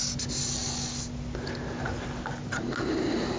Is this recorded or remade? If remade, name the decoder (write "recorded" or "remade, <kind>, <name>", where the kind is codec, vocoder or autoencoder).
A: recorded